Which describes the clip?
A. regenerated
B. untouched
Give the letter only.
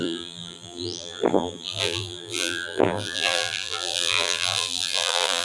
A